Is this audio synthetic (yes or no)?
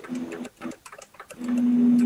no